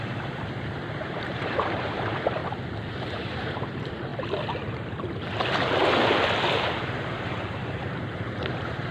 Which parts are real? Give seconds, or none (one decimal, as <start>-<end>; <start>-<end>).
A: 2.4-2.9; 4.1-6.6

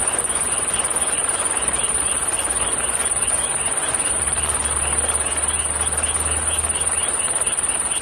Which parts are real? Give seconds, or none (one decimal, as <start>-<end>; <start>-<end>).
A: 1.8-2.2; 4.6-8.0

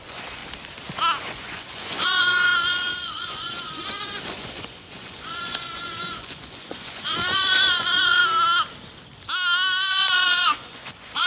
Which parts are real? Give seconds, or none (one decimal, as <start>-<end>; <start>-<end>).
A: 0.4-1.2; 8.2-9.9

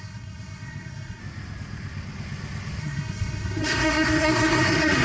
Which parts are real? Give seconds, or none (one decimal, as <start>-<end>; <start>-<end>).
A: 1.2-2.8